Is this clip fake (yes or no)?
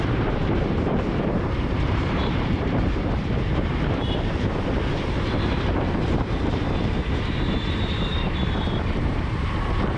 yes